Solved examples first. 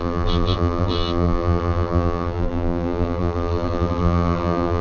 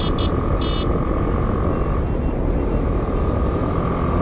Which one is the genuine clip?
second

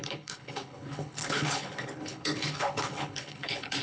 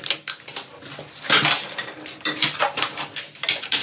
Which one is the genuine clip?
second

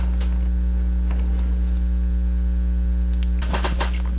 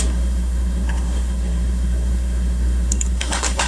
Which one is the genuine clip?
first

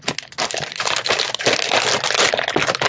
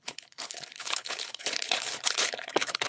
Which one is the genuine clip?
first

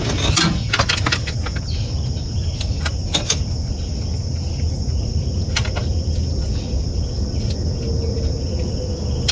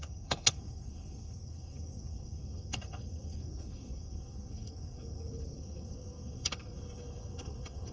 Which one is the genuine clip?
first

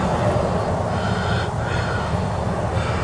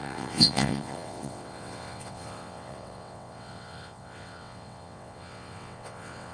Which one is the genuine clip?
first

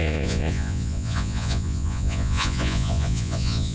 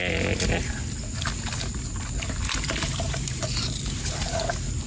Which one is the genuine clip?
second